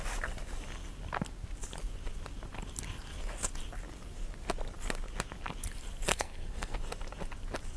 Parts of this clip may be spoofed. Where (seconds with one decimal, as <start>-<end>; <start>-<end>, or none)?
6.1-6.8